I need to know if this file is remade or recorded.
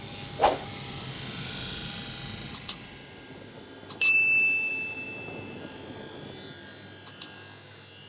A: recorded